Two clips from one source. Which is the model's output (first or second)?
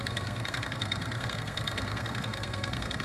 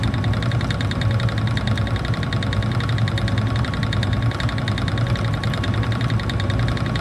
first